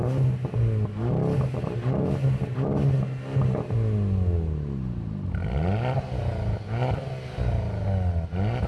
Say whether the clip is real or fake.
real